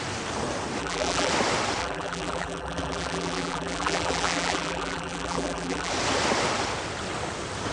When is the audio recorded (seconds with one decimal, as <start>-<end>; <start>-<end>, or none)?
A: 0.0-0.8; 1.3-1.8; 5.9-7.7